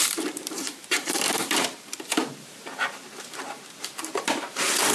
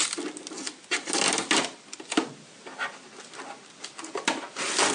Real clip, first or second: second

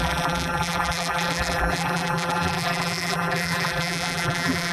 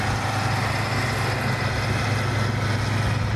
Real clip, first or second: second